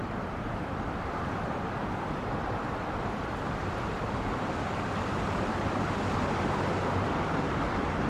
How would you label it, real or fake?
fake